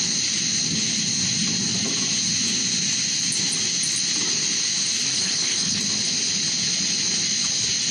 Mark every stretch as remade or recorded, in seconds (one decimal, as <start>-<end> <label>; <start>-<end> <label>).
0.0-5.1 recorded; 5.1-5.8 remade; 5.8-7.9 recorded